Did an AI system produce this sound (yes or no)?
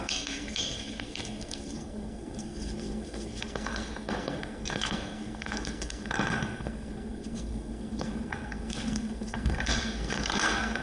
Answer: yes